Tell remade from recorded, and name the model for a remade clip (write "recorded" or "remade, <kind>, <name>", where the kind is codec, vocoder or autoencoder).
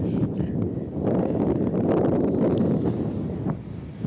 remade, vocoder, BigVGAN v2